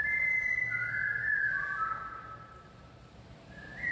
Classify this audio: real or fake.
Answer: real